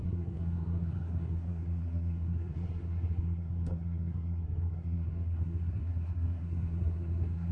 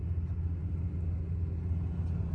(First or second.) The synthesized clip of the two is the first